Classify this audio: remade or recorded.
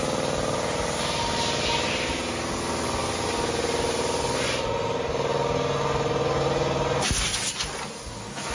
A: recorded